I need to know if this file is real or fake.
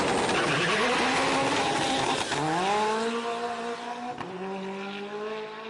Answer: real